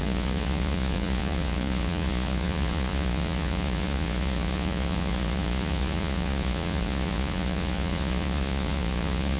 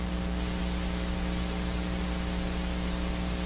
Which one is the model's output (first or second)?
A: first